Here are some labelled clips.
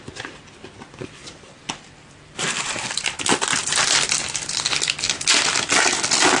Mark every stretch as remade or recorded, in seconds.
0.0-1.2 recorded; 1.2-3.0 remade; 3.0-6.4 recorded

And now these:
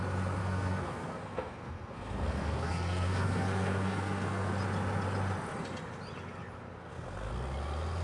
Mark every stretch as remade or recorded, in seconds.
0.0-0.4 recorded; 0.4-4.5 remade; 4.5-6.8 recorded; 6.8-7.3 remade; 7.3-8.0 recorded

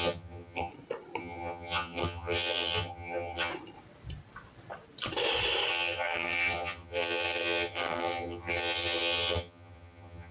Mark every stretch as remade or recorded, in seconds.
0.0-0.7 remade; 0.7-1.2 recorded; 1.2-3.5 remade; 3.5-5.7 recorded; 5.7-10.3 remade

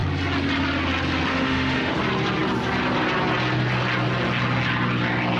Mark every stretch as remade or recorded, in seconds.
0.0-1.3 recorded; 1.3-2.0 remade; 2.0-5.4 recorded

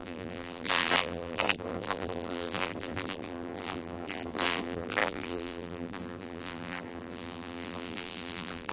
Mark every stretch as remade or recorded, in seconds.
0.0-8.7 remade

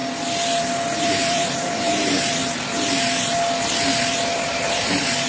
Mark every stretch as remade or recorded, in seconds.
0.0-1.0 recorded; 1.0-2.4 remade; 2.4-4.5 recorded; 4.5-5.3 remade